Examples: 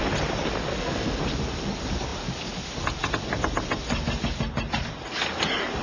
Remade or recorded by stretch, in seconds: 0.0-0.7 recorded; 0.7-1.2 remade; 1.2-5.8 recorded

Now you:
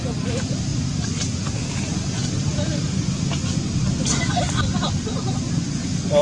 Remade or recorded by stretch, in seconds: 0.0-6.2 recorded

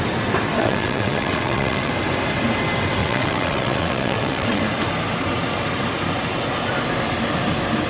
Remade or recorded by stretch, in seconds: 0.0-0.6 recorded; 0.6-1.9 remade; 1.9-3.0 recorded; 3.0-4.6 remade; 4.6-7.9 recorded

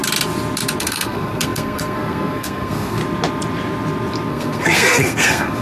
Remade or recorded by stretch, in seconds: 0.0-0.8 recorded; 0.8-3.0 remade; 3.0-4.3 recorded; 4.3-5.6 remade

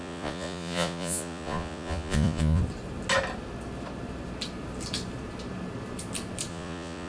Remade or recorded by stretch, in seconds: 0.0-2.6 remade; 2.6-6.5 recorded; 6.5-7.1 remade

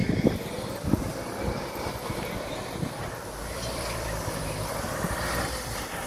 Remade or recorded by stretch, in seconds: 0.0-3.0 remade; 3.0-3.4 recorded; 3.4-4.4 remade; 4.4-6.1 recorded

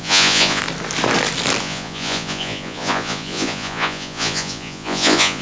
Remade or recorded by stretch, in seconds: 0.0-0.6 remade; 0.6-1.6 recorded; 1.6-5.4 remade